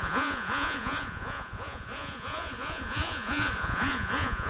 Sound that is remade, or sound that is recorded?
remade